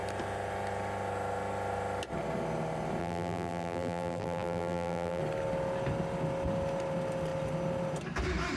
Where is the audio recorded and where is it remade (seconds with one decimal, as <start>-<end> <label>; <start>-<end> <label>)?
0.0-3.0 recorded; 3.0-5.2 remade; 5.2-8.6 recorded